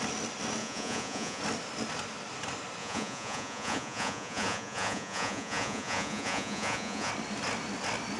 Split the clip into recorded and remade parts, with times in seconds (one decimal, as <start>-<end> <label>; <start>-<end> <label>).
0.0-0.6 recorded; 0.6-1.4 remade; 1.4-2.8 recorded; 2.8-7.1 remade; 7.1-8.2 recorded